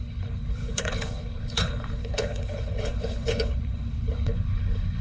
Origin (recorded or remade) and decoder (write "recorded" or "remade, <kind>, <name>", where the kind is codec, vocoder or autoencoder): remade, codec, HILCodec